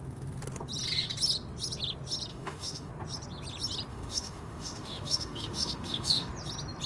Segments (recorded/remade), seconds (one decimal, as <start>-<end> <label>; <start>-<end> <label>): 0.0-2.3 recorded; 2.3-2.9 remade; 2.9-3.9 recorded; 3.9-6.3 remade; 6.3-6.9 recorded